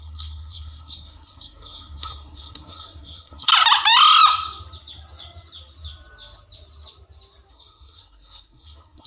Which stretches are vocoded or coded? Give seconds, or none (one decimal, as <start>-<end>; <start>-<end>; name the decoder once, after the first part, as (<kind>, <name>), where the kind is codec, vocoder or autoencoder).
0.0-3.5 (codec, SNAC); 7.5-9.1